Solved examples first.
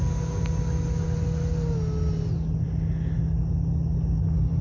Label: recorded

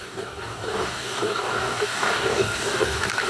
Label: remade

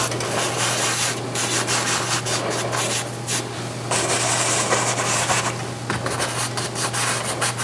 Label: recorded